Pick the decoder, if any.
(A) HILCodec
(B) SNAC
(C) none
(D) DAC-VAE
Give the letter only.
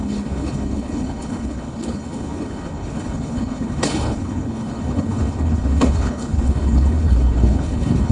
A